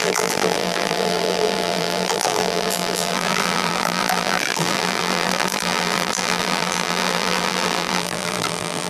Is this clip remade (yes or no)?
yes